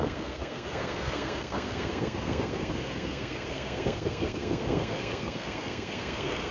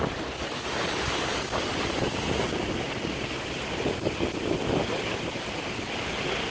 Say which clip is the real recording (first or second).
second